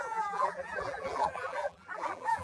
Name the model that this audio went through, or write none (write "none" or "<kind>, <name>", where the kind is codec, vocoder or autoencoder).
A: vocoder, BigVGAN v2